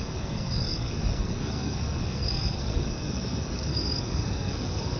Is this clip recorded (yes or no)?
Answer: no